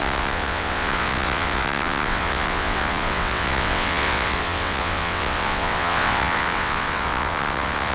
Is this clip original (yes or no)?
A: no